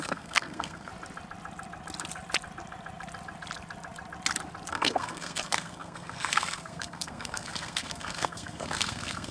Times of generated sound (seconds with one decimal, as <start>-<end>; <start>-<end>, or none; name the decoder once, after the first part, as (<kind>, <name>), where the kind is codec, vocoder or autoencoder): 0.0-0.9 (codec, SNAC); 4.7-9.3